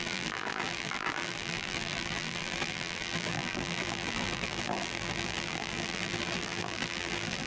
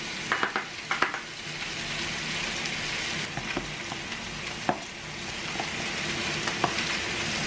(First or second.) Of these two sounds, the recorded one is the second